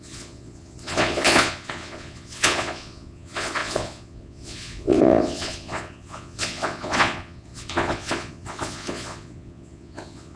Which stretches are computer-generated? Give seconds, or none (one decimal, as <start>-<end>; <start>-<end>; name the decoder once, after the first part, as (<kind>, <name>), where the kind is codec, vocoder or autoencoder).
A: 0.0-10.4 (vocoder, Vocos)